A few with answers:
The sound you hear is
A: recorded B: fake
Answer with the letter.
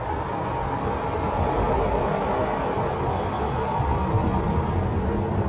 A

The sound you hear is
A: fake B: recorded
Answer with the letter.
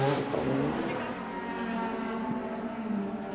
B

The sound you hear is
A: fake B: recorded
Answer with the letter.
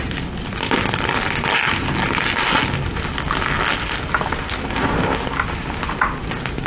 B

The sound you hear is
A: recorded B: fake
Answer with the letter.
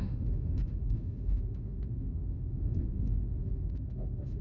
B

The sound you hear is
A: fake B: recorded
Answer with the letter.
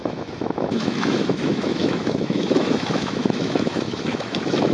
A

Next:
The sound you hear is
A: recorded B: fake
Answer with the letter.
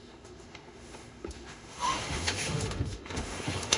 B